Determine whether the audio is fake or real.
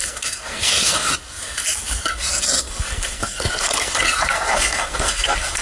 fake